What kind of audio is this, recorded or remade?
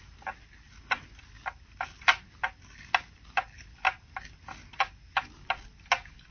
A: recorded